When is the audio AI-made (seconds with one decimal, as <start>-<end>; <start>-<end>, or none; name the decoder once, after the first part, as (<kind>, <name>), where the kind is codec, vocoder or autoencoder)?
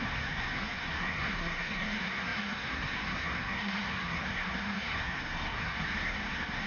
0.0-6.7 (codec, SNAC)